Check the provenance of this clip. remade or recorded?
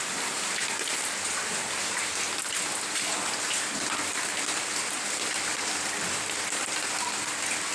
recorded